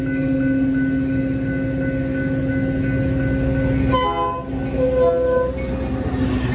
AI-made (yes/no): no